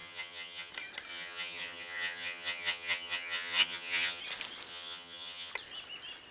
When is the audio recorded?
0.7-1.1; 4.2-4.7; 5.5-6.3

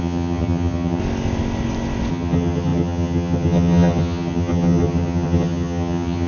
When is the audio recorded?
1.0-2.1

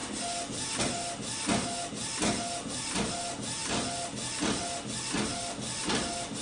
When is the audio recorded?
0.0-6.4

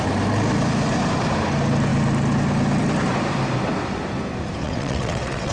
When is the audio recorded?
0.0-4.6